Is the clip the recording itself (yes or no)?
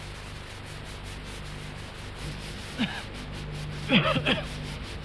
yes